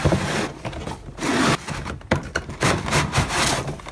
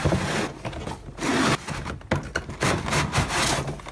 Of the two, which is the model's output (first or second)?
first